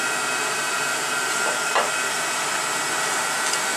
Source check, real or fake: real